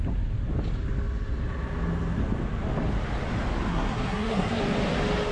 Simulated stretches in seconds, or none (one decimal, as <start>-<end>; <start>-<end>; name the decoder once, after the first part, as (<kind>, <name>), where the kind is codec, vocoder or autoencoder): 3.7-4.6 (codec, SNAC)

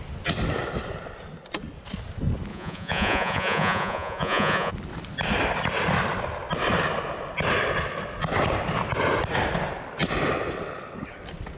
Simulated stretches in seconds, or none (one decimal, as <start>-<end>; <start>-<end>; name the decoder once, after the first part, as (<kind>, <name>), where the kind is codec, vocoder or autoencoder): 2.5-4.7 (vocoder, Vocos)

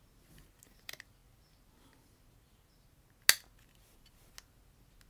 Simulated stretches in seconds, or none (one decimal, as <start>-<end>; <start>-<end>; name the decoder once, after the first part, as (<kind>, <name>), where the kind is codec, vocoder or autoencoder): none

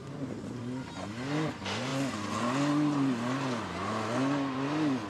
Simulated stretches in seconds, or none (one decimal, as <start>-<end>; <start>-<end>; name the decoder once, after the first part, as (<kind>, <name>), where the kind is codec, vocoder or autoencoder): none

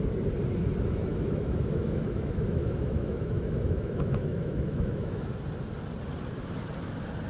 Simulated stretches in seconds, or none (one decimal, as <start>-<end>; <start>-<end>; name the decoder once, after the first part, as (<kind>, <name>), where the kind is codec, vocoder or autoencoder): 1.1-5.2 (autoencoder, DAC-VAE)